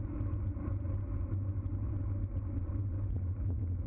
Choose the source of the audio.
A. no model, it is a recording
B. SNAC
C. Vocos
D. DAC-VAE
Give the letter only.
A